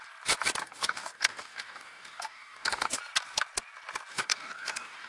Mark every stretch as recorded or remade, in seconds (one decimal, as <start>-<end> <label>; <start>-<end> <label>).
0.0-0.6 recorded; 0.6-3.0 remade; 3.0-4.1 recorded; 4.1-5.1 remade